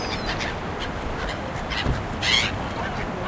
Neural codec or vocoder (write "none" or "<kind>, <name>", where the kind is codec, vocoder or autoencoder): none